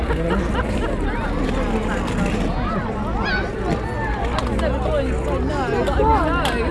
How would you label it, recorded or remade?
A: recorded